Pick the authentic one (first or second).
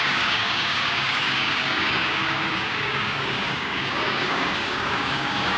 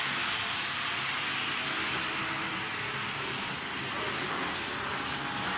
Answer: second